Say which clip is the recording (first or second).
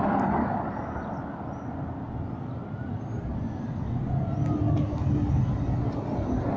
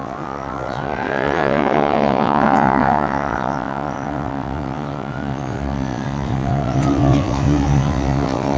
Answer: first